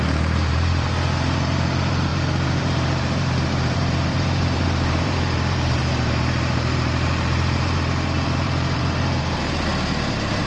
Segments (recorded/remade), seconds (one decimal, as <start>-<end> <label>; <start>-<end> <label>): 0.0-9.7 remade; 9.7-10.5 recorded